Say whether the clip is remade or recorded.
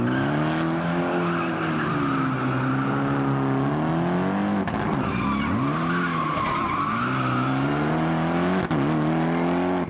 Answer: recorded